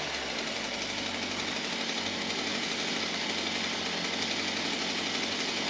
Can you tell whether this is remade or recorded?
recorded